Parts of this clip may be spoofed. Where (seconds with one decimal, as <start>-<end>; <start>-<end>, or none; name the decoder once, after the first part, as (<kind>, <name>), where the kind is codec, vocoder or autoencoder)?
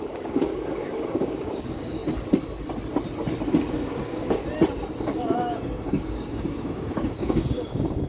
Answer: 0.0-2.0 (codec, DAC); 3.7-4.4; 5.0-8.1